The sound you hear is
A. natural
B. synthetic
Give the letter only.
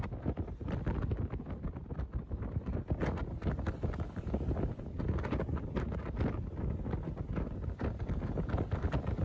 A